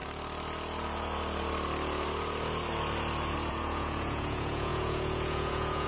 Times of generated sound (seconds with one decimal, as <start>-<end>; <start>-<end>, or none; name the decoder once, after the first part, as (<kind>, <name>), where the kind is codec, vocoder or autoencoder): 3.5-5.9 (vocoder, Vocos)